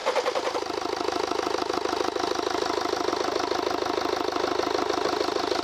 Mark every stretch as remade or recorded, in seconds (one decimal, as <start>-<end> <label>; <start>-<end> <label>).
0.0-5.6 recorded